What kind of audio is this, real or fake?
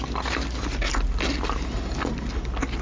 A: real